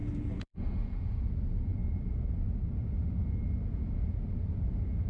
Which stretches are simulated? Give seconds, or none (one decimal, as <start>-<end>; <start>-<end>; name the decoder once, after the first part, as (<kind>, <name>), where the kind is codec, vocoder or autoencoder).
0.0-1.8 (vocoder, Vocos); 3.7-5.1